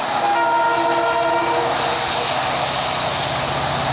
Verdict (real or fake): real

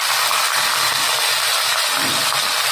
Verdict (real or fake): real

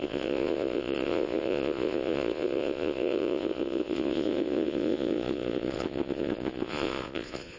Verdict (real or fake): fake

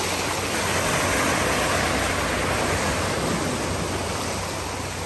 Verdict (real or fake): real